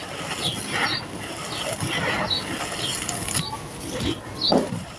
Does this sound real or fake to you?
real